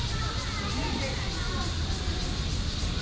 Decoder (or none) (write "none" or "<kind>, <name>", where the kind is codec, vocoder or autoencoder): none